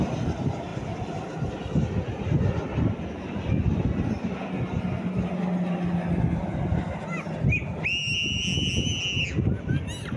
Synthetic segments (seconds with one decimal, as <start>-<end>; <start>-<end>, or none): none